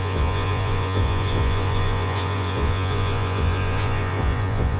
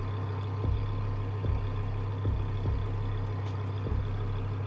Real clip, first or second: second